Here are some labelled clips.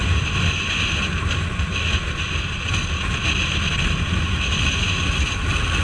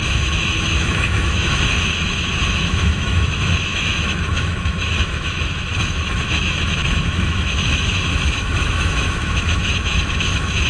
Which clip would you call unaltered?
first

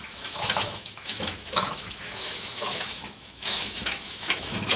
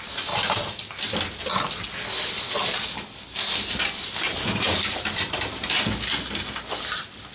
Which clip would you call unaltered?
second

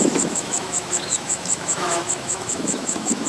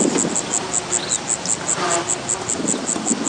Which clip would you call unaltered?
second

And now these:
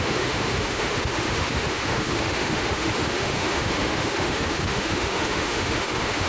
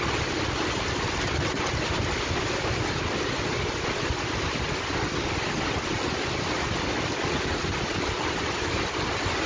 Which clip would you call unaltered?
second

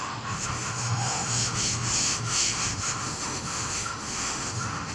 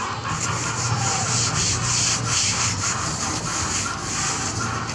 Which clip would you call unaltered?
second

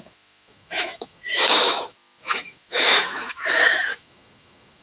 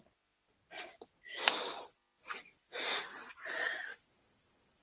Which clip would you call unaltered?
second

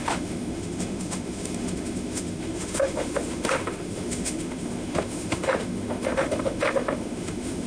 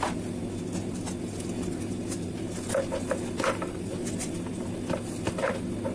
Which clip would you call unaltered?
second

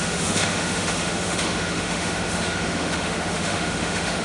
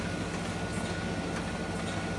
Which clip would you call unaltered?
second